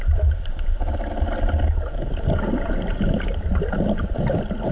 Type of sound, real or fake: real